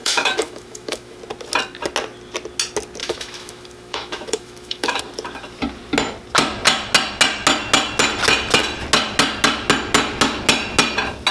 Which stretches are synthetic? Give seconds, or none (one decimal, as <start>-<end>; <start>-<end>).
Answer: 0.0-1.2; 3.0-5.0

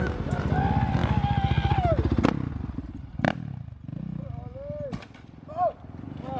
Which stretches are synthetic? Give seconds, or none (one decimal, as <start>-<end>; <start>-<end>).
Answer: none

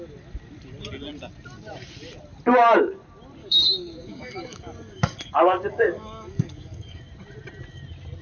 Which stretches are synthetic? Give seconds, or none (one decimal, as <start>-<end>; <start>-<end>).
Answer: 3.4-7.0

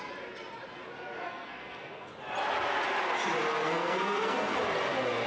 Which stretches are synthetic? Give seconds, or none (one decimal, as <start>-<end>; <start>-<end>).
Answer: 1.2-2.1; 3.6-4.6